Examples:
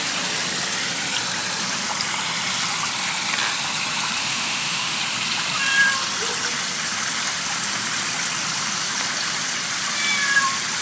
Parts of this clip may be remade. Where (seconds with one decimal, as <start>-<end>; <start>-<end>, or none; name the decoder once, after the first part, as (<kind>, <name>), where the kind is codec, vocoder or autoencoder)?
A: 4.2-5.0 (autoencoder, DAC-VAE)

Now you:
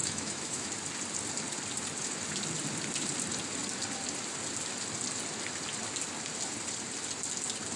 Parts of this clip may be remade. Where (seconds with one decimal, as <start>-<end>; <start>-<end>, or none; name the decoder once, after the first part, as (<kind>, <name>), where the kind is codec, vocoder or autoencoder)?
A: 0.0-0.7 (autoencoder, DAC-VAE)

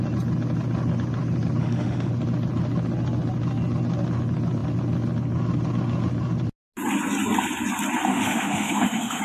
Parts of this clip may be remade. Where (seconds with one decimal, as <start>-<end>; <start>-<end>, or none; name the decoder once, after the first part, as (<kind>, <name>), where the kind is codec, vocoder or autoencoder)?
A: 1.6-2.1 (autoencoder, DAC-VAE); 8.1-9.2

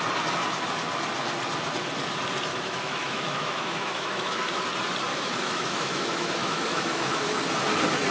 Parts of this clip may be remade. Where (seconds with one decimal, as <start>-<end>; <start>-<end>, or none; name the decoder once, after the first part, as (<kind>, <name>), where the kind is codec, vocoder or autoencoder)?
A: 2.5-4.6 (autoencoder, DAC-VAE); 5.1-7.4

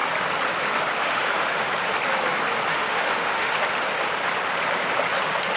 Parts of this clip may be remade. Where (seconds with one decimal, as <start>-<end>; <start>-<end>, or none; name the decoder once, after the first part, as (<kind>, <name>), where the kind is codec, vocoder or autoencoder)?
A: 1.0-1.7 (autoencoder, DAC-VAE); 2.7-3.5

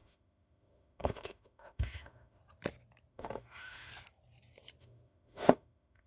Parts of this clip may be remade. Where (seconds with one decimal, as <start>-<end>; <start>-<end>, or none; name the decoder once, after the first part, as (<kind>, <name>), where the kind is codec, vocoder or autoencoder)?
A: 0.0-2.4 (autoencoder, DAC-VAE); 3.1-3.9; 4.8-6.1